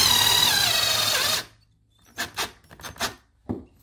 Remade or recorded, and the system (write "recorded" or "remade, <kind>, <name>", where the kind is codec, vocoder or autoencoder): recorded